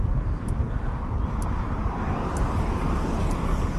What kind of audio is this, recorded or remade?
recorded